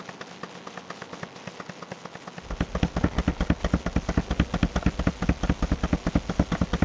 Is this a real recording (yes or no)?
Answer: yes